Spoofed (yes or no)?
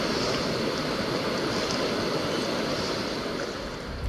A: no